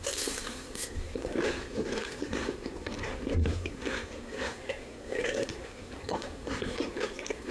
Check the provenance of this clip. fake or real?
fake